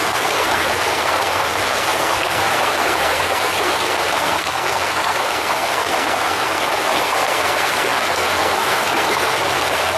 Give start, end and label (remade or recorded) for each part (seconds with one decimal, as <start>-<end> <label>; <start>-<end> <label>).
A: 0.0-10.0 remade